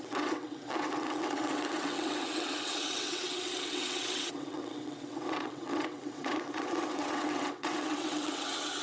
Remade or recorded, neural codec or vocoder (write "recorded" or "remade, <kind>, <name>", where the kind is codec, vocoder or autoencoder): remade, vocoder, WaveNeXt